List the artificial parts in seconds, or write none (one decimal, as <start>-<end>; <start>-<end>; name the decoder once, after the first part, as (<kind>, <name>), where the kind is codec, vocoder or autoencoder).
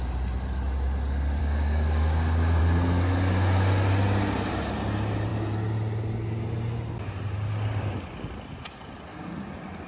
1.4-2.6 (codec, DAC)